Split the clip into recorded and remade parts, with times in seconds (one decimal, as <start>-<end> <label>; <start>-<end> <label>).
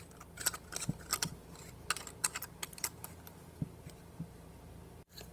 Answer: 0.0-5.3 recorded